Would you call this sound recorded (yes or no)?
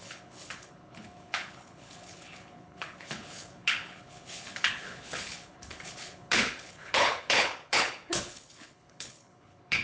no